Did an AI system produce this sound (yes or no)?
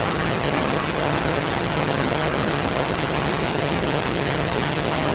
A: yes